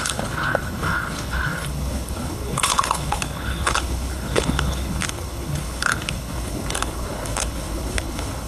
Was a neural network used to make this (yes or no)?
yes